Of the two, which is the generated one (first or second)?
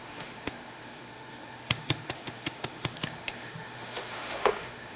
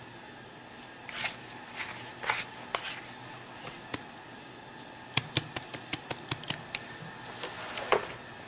first